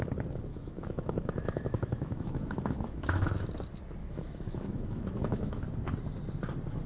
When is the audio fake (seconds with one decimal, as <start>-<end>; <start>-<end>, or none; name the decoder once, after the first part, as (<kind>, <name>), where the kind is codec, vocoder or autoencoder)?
0.5-3.4 (autoencoder, DAC-VAE); 4.0-5.6